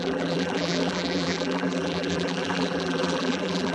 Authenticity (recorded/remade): remade